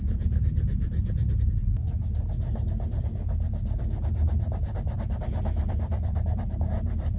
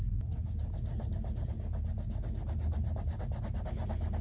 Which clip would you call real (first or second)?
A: second